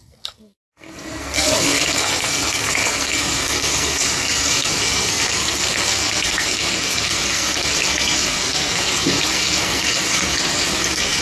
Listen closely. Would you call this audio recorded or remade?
remade